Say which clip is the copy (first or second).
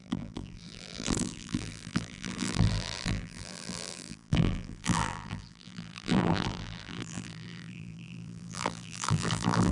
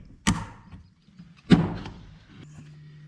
first